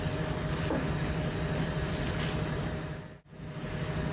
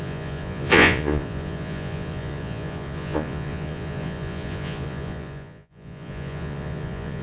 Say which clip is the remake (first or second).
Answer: second